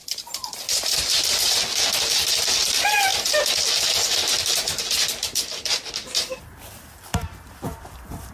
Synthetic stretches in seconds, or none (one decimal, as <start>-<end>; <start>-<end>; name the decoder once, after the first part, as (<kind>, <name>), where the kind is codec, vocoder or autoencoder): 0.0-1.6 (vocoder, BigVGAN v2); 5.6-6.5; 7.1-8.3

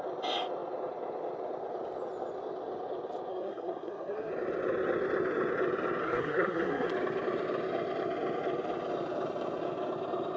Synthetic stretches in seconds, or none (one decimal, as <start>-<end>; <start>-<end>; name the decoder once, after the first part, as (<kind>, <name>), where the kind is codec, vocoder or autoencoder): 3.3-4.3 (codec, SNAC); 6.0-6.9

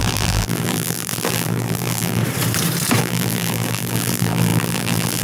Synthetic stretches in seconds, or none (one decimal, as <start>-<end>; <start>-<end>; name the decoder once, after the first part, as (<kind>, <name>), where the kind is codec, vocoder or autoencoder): 0.0-2.2 (vocoder, BigVGAN v2); 3.0-5.2